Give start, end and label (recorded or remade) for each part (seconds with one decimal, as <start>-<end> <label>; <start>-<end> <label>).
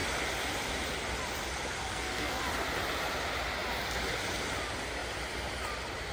0.0-1.8 recorded; 1.8-2.4 remade; 2.4-6.1 recorded